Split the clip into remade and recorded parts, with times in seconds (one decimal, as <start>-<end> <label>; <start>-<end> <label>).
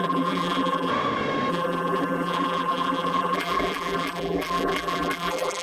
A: 0.0-0.9 remade; 0.9-1.5 recorded; 1.5-5.6 remade